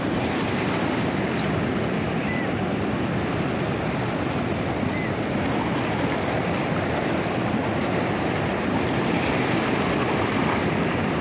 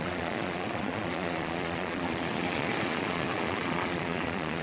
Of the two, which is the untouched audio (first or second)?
first